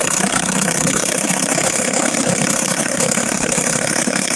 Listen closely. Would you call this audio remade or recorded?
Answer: remade